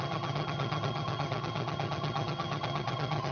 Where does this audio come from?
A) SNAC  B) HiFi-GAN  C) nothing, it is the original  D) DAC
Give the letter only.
B